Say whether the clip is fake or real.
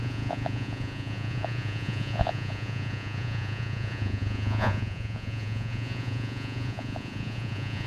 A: fake